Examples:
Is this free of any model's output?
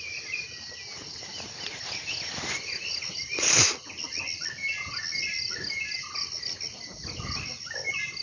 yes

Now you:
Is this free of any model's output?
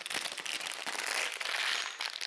yes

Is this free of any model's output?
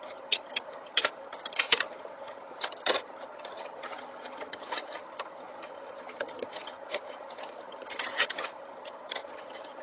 no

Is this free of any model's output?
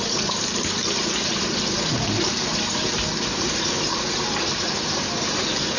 no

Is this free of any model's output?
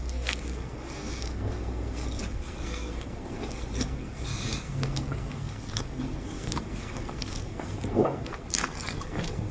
no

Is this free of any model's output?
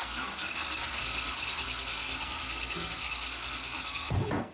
no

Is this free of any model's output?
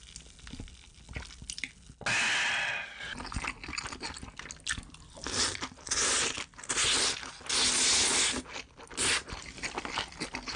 yes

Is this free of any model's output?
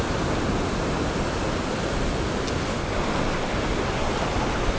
yes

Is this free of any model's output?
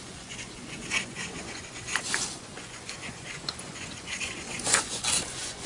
no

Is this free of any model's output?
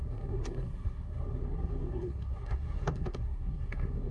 no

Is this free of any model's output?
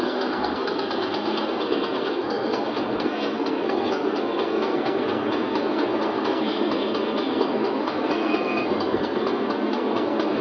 no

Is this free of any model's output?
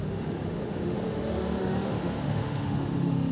no